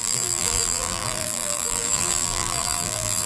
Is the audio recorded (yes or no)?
no